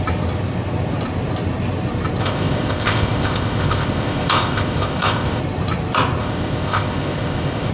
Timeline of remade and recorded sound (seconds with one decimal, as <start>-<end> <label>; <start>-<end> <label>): 0.0-2.2 recorded; 2.2-5.4 remade; 5.4-6.2 recorded; 6.2-7.7 remade